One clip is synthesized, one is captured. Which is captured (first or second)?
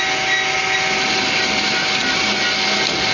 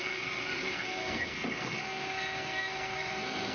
first